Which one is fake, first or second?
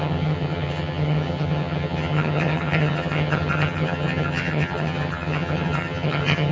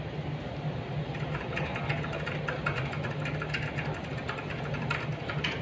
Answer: first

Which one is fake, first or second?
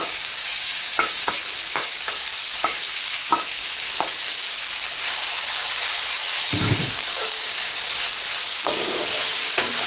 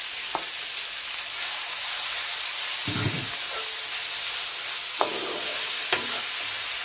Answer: first